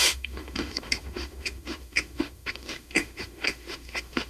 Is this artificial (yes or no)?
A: yes